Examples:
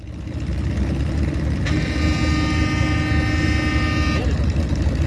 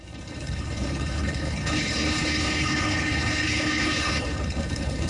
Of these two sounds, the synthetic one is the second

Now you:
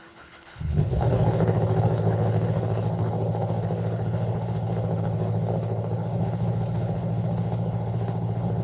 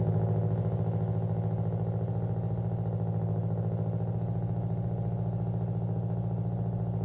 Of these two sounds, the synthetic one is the first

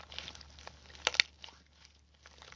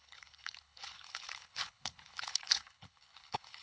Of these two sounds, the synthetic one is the second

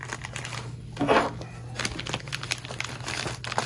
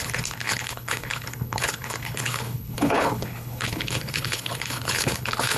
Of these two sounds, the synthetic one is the second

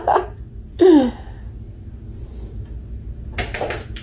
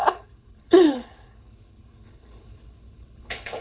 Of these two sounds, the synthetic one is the second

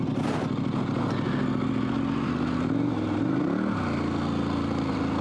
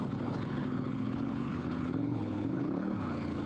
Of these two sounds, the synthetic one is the second